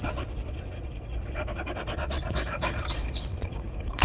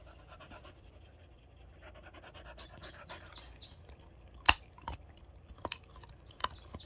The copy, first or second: first